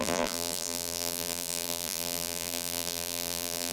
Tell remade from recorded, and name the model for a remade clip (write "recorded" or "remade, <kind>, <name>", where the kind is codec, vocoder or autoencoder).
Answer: remade, vocoder, BigVGAN v2